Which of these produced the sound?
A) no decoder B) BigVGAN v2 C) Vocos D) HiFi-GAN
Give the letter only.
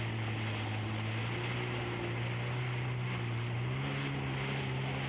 A